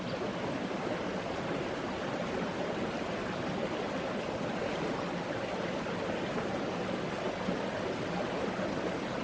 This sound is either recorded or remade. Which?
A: recorded